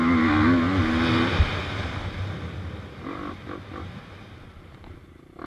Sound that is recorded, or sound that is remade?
recorded